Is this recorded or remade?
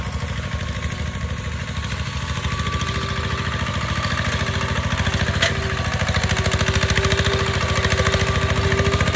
recorded